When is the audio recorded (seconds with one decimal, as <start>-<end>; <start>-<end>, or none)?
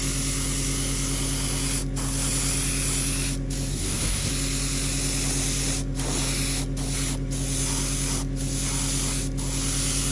0.0-3.7; 4.3-10.1